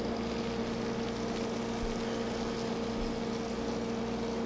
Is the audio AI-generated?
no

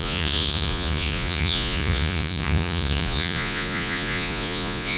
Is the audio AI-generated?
yes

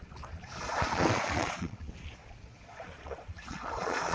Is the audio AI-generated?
yes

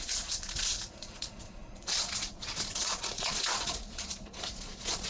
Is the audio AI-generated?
yes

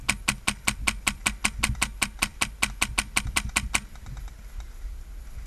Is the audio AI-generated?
no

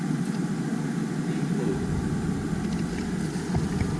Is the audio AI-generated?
no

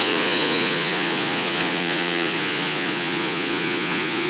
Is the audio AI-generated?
yes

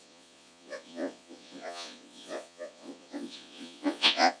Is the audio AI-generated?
yes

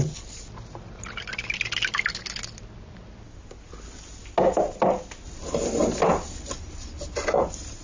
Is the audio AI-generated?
no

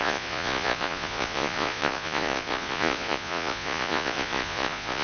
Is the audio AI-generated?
yes